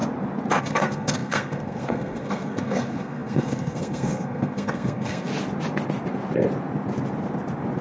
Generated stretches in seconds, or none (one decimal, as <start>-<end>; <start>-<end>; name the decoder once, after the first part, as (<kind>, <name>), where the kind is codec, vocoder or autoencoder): 0.6-5.3 (codec, SNAC)